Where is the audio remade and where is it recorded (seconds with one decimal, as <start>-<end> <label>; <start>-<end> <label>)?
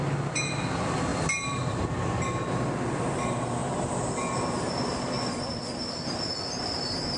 0.0-1.1 recorded; 1.1-1.8 remade; 1.8-7.2 recorded